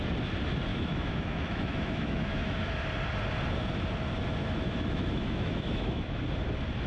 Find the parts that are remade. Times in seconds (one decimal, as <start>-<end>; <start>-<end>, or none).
0.7-2.7; 4.4-6.2